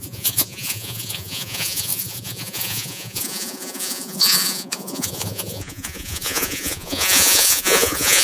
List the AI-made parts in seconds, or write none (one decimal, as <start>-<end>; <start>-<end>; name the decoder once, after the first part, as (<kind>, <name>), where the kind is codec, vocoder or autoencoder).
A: 0.0-8.2 (vocoder, Vocos)